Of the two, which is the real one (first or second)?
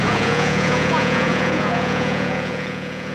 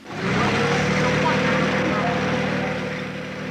second